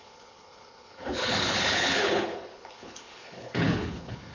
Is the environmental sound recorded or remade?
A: remade